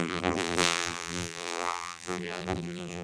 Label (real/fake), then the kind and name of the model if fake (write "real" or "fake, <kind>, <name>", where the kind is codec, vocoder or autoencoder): fake, vocoder, BigVGAN v2